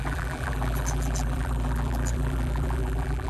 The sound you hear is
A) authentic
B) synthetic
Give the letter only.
B